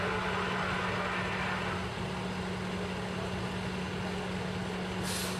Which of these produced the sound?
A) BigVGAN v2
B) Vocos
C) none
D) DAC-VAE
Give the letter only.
C